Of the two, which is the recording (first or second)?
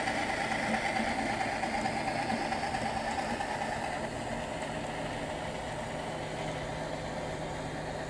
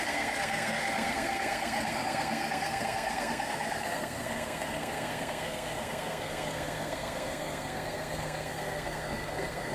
first